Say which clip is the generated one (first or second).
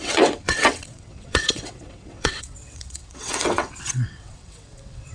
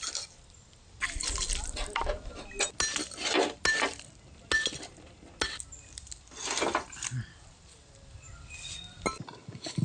first